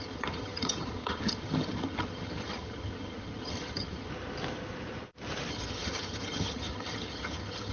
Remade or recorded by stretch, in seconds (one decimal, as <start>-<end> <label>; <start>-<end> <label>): 0.0-4.1 remade; 4.1-5.5 recorded; 5.5-7.7 remade